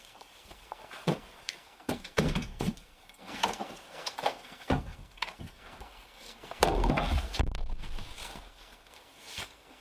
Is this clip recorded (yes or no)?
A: no